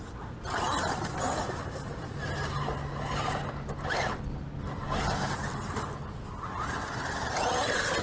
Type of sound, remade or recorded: recorded